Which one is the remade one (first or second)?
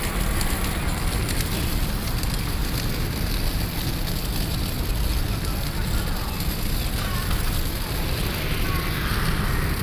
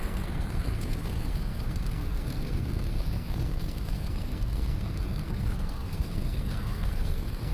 second